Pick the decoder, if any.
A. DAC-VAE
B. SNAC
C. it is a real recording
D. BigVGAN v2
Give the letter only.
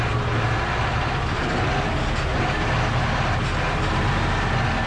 C